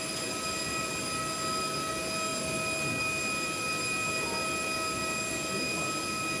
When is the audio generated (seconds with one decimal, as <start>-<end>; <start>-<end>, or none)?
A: none